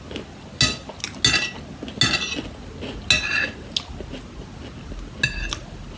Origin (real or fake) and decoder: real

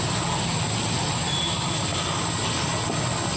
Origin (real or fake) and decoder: real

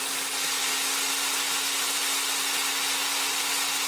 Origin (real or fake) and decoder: real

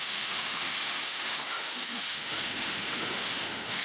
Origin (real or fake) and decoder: fake, autoencoder, DAC-VAE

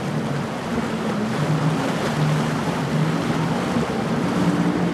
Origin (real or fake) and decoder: real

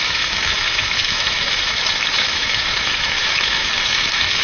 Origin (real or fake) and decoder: fake, autoencoder, DAC-VAE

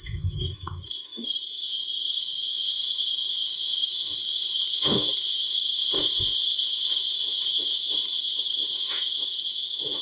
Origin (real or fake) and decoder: fake, autoencoder, DAC-VAE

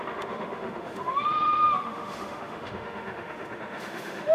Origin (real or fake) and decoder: fake, autoencoder, DAC-VAE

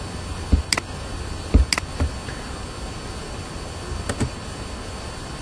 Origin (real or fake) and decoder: real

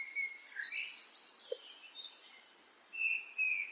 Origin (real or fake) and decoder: real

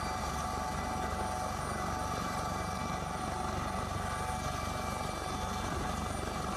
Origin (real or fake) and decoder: real